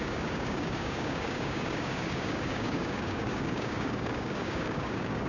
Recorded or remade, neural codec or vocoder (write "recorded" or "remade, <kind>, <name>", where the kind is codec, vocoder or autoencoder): remade, codec, DAC